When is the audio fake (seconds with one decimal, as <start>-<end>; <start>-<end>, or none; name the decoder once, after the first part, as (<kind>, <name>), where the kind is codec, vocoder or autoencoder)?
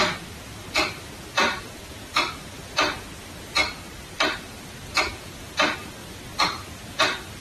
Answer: 0.0-7.4 (vocoder, BigVGAN v2)